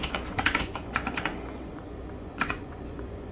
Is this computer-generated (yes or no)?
yes